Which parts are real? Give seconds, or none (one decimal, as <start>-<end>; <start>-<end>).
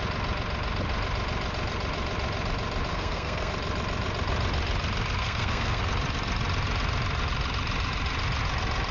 0.0-2.9; 3.5-5.2; 5.8-8.9